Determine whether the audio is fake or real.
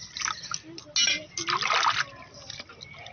real